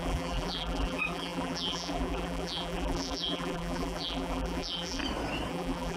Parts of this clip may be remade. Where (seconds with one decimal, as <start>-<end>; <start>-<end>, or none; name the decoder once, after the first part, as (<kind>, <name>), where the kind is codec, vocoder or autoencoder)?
0.0-5.0 (vocoder, BigVGAN v2); 5.5-6.0